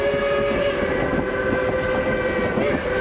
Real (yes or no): yes